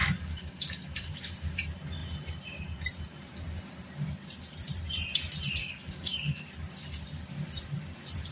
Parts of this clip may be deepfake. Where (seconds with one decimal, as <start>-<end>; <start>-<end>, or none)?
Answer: 0.0-1.3; 5.6-6.5